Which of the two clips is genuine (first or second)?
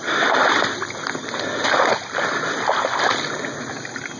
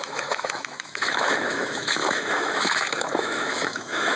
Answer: first